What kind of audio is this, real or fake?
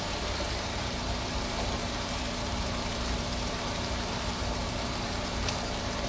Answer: fake